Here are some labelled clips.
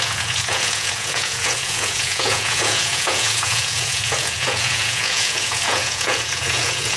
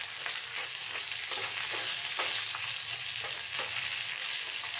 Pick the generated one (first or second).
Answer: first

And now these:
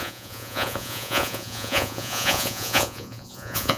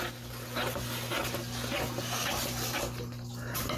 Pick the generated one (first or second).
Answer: first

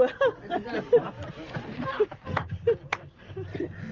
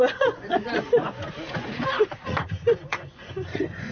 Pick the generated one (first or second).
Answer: second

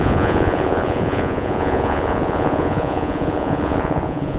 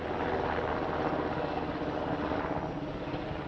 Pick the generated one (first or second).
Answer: first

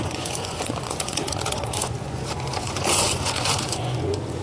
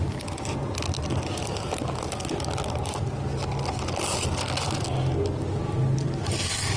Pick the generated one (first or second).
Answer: first